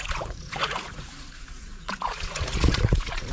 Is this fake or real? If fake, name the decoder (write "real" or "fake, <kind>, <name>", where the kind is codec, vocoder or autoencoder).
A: fake, vocoder, Vocos